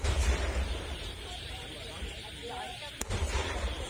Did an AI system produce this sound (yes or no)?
yes